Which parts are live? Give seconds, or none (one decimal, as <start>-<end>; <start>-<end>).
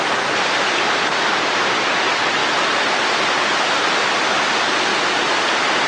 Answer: 0.0-5.9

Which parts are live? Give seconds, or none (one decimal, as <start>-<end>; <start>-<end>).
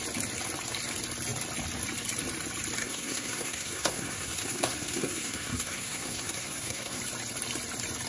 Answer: 0.0-2.8; 7.0-8.1